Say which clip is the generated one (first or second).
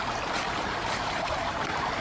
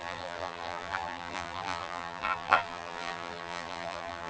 second